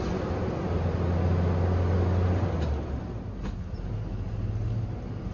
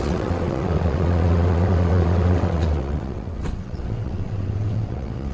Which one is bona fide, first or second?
first